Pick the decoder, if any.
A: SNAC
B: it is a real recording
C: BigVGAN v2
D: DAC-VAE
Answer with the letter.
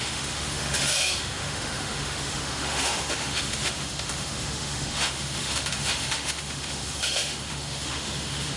D